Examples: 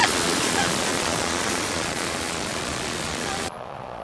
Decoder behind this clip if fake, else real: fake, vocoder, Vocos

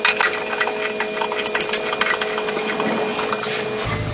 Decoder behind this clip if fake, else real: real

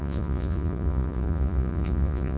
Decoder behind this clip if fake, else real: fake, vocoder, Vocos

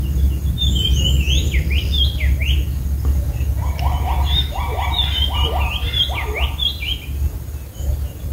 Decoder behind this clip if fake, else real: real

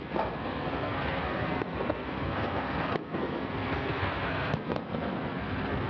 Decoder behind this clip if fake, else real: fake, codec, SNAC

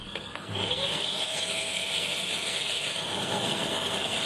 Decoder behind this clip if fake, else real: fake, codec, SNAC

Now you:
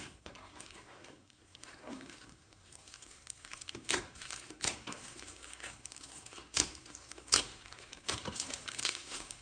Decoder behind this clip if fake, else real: fake, codec, SNAC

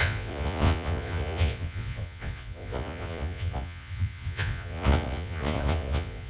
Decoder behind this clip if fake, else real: fake, vocoder, Vocos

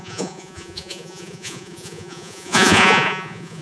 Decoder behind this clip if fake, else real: fake, vocoder, Vocos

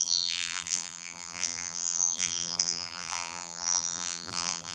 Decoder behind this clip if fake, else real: fake, vocoder, BigVGAN v2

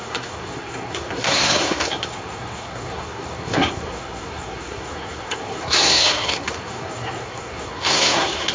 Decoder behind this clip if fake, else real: fake, codec, SNAC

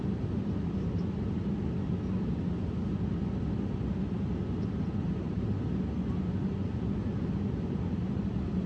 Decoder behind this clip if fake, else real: real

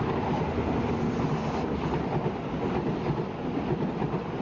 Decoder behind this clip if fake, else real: real